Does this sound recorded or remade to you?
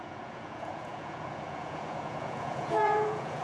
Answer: remade